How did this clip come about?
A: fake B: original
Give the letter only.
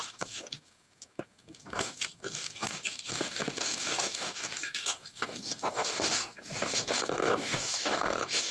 A